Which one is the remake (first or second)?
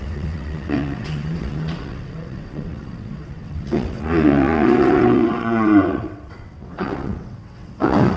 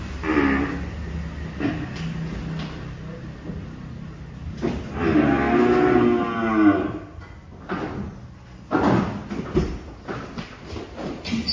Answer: first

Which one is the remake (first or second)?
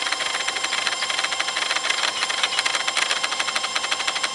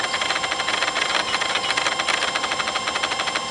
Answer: first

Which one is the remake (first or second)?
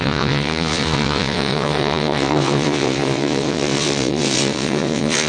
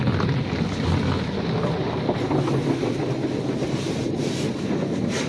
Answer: first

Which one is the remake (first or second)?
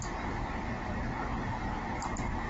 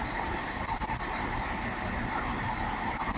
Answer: second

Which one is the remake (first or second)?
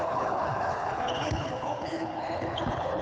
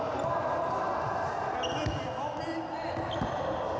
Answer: first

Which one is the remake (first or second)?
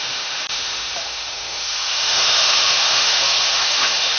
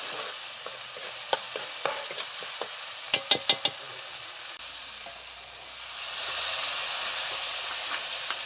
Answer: first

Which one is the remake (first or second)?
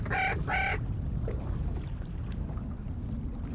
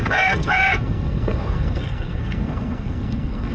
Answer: second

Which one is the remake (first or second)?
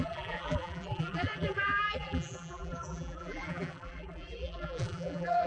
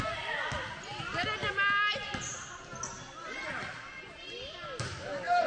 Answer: first